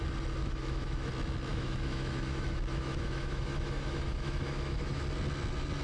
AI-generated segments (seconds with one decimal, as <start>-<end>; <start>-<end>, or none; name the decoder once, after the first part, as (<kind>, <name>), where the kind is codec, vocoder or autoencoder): 0.4-1.1 (autoencoder, DAC-VAE); 1.5-5.0